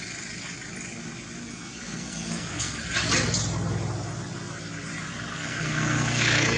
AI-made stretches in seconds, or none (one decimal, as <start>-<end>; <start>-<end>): 1.4-2.8; 5.3-6.6